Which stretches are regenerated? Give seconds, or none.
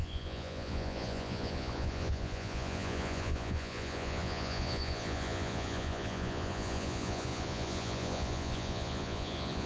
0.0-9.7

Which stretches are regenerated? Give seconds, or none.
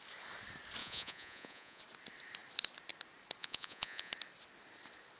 0.8-1.8; 3.4-4.1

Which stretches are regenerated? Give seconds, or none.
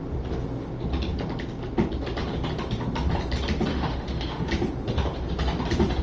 3.7-4.5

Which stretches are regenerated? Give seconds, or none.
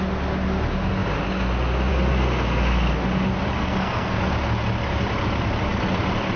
3.6-4.2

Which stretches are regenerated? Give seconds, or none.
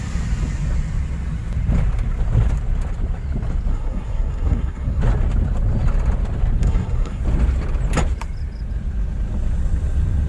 3.7-5.0; 6.6-7.2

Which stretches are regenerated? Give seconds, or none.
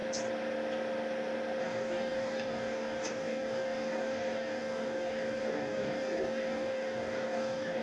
1.6-7.8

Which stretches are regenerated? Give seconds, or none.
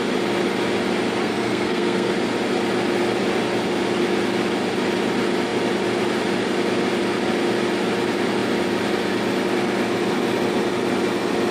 1.2-2.1